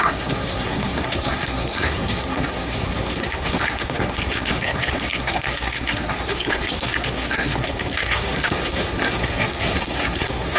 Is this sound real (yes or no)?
no